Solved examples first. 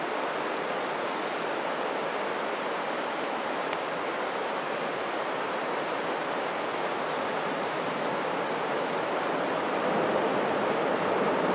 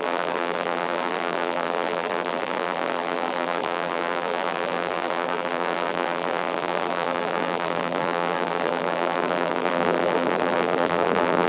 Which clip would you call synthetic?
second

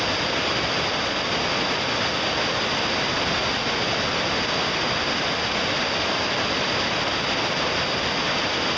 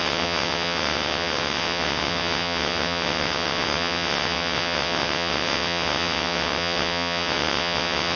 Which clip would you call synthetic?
second